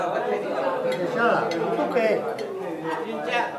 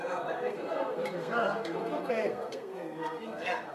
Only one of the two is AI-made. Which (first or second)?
second